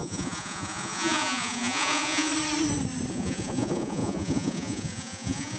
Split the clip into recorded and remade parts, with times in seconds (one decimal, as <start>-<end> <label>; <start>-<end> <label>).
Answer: 0.0-2.3 remade; 2.3-3.1 recorded; 3.1-5.6 remade